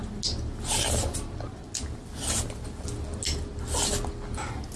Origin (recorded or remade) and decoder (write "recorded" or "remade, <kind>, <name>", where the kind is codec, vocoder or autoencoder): recorded